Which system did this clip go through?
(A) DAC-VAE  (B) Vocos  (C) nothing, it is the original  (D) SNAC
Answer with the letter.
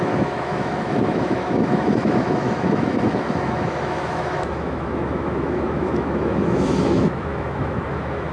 A